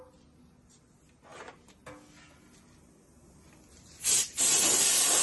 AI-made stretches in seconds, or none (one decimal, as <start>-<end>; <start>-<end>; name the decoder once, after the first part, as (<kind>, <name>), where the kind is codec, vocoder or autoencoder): none